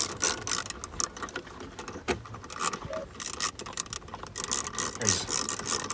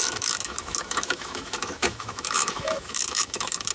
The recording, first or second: first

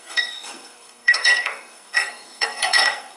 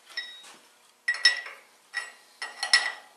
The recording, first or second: second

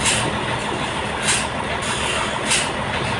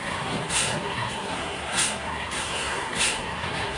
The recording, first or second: first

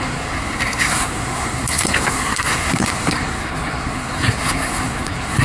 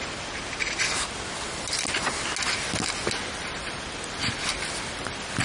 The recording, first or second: second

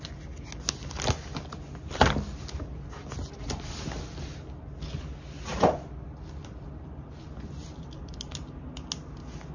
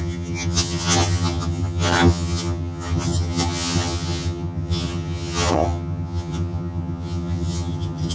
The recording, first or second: first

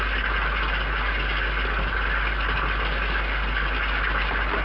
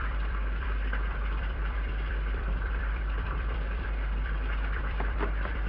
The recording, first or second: first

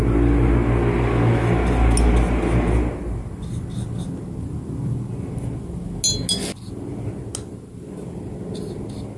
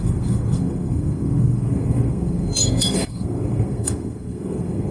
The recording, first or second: first